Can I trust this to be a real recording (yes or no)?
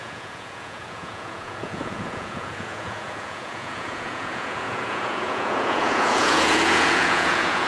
no